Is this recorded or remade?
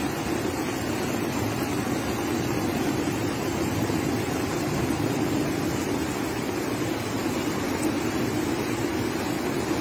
recorded